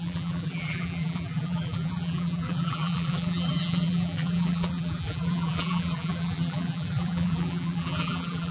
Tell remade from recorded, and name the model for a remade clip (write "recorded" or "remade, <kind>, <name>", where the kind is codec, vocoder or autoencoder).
remade, vocoder, BigVGAN v2